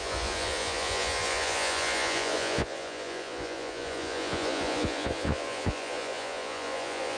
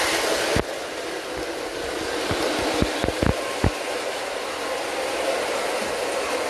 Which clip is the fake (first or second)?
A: first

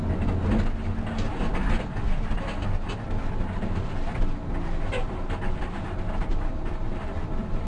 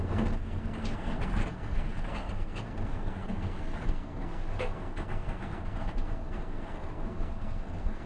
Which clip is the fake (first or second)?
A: second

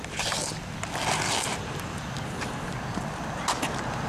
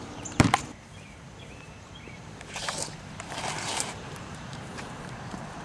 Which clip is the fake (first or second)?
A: second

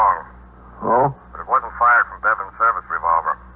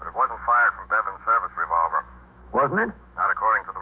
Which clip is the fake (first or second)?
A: second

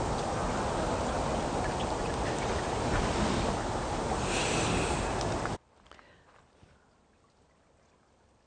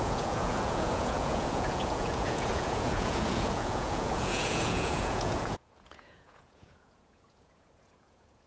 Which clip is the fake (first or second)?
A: second